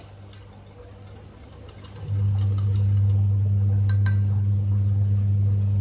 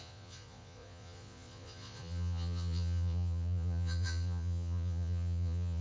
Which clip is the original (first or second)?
first